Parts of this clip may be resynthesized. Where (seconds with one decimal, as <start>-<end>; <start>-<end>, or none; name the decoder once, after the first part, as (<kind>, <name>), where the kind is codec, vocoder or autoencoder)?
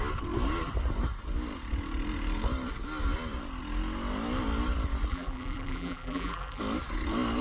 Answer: 5.1-6.6 (vocoder, BigVGAN v2)